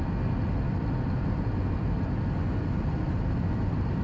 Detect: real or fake real